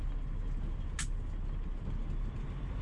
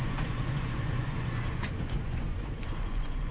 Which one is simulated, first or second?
second